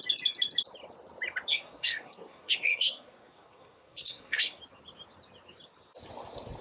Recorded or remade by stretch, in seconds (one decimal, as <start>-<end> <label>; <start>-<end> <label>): 0.0-1.5 recorded; 1.5-4.6 remade; 4.6-6.6 recorded